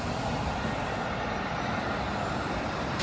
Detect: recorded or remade recorded